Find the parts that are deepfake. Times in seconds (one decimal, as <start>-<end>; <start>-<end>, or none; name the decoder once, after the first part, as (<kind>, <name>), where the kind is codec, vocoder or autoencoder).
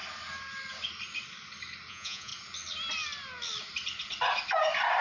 1.9-2.3 (vocoder, Vocos)